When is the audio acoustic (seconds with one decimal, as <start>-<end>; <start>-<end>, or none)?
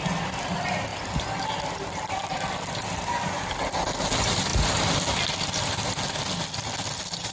0.0-7.3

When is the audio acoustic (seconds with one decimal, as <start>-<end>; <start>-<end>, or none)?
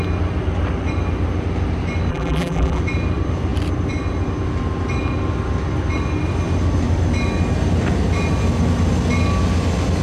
0.0-2.1; 2.8-10.0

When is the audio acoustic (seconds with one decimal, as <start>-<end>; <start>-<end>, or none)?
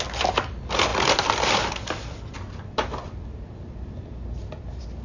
0.0-0.9; 3.9-5.0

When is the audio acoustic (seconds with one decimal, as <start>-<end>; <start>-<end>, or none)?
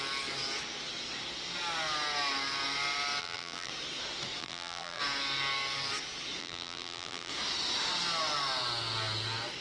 0.0-3.2; 3.7-4.4; 5.0-6.4; 7.3-9.6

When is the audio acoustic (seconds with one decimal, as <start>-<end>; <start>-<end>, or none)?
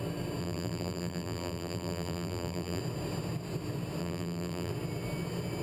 0.0-0.4; 2.8-4.0; 4.7-5.6